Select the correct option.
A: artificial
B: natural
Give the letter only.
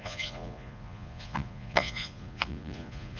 A